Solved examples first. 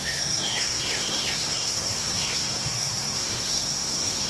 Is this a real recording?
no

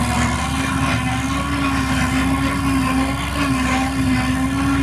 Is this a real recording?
yes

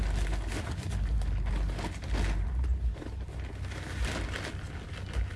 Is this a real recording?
yes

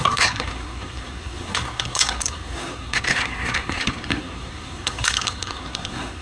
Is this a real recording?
no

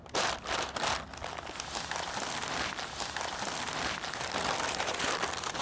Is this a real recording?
yes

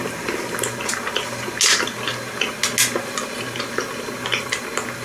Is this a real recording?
yes